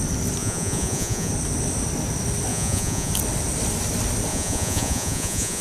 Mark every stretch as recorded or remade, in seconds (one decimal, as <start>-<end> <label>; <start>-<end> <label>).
0.0-0.4 recorded; 0.4-1.3 remade; 1.3-2.5 recorded; 2.5-3.1 remade; 3.1-4.3 recorded; 4.3-5.6 remade